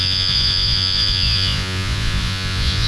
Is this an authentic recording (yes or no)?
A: no